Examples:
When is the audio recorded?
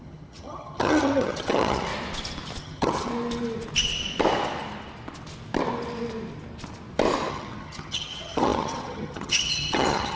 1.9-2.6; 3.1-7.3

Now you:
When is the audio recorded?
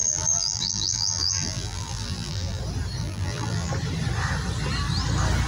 2.6-3.0; 3.7-5.5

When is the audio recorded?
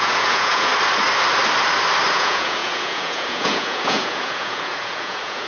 0.7-2.1